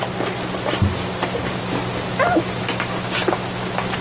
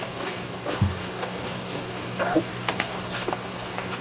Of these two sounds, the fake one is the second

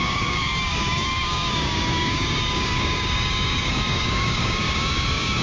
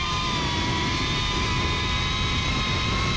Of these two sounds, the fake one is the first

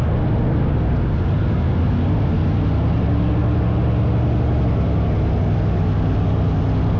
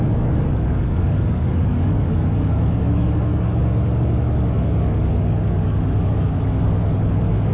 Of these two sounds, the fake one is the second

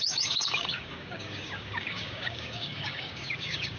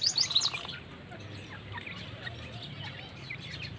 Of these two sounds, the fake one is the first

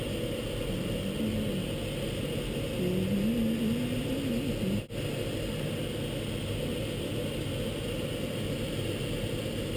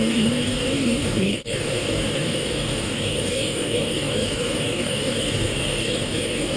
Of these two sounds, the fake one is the second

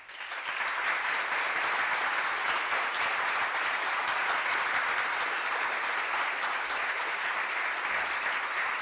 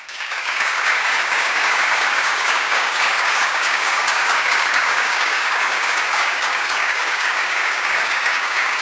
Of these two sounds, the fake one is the second